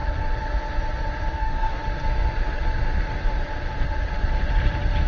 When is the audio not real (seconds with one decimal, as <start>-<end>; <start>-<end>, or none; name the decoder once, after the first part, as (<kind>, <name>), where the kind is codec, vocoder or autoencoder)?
1.3-1.8 (codec, DAC)